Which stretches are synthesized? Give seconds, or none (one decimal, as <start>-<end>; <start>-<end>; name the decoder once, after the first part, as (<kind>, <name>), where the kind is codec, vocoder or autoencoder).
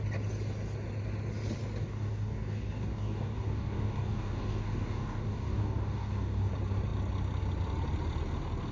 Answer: 1.8-6.5 (codec, DAC)